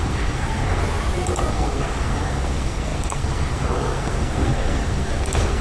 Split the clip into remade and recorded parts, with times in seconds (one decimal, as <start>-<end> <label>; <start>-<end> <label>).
0.0-0.8 remade; 0.8-1.5 recorded; 1.5-5.6 remade